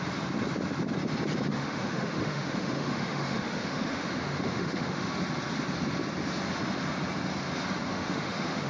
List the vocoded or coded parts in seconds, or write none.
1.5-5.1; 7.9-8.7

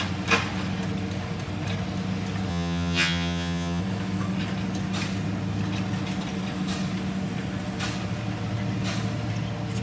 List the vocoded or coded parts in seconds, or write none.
2.5-3.8

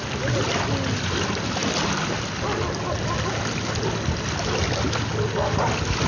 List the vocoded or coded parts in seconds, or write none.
none

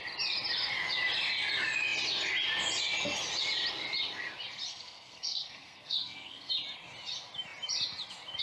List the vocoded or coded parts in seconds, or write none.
4.7-6.5

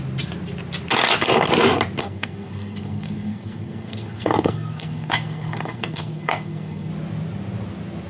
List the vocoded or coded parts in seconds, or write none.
2.0-6.9

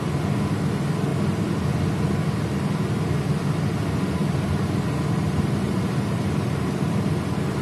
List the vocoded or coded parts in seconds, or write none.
1.1-1.6; 4.2-7.6